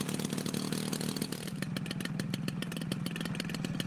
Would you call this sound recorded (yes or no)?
yes